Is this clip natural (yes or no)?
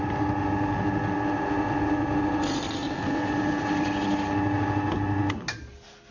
yes